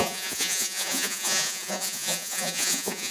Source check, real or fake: fake